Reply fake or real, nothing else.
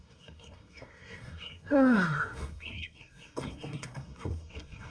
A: fake